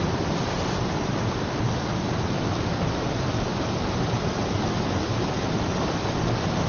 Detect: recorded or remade remade